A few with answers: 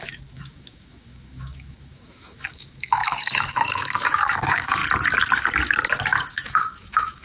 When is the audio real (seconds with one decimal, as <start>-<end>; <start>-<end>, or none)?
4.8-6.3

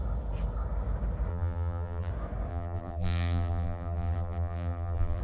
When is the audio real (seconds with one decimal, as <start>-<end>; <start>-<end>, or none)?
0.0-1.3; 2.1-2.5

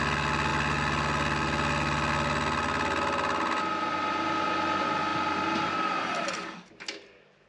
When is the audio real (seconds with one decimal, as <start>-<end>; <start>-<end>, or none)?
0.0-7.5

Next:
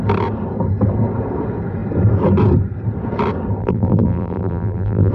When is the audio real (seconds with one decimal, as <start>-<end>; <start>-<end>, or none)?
0.0-3.6

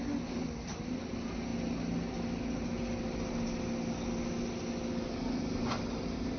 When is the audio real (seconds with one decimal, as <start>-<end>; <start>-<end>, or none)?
0.0-6.4

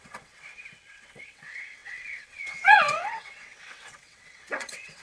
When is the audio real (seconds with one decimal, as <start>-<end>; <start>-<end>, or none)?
none

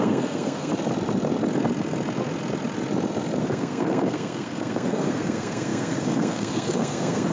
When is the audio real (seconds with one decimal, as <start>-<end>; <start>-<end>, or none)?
0.7-3.4